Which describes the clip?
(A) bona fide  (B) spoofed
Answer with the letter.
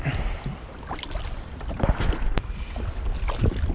A